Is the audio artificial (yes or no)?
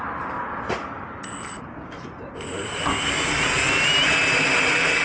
no